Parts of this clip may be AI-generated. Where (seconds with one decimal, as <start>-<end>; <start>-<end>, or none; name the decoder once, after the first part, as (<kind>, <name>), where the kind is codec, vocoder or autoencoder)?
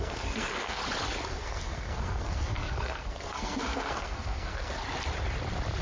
0.0-0.8 (codec, SNAC); 1.3-4.8